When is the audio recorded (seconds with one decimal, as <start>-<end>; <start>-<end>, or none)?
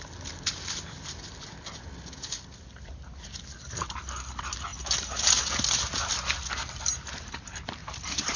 0.0-7.8